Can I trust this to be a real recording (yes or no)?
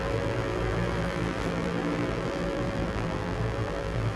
no